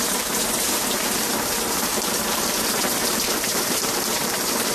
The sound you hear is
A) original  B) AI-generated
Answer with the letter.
B